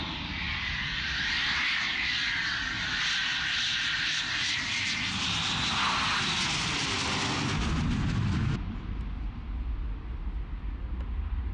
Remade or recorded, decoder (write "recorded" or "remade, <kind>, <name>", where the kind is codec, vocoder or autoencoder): recorded